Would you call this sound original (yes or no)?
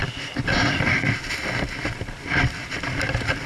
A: yes